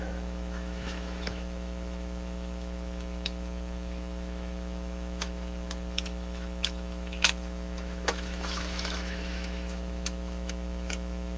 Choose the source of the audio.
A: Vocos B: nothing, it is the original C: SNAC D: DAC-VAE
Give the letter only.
D